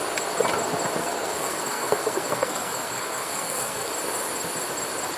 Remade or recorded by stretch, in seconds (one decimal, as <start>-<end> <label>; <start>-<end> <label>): 0.0-1.0 recorded; 1.0-3.9 remade; 3.9-5.2 recorded